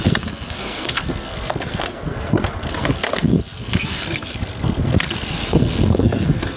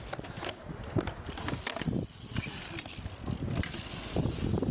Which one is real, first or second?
second